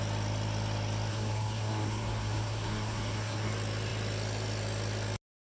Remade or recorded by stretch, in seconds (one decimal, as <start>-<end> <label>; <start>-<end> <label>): 0.0-1.1 recorded; 1.1-3.5 remade; 3.5-5.5 recorded